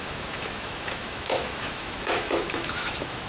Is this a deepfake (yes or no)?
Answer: yes